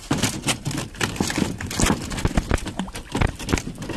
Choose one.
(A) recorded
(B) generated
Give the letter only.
A